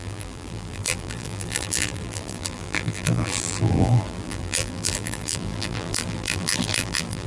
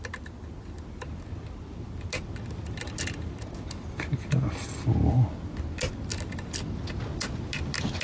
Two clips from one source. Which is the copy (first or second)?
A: first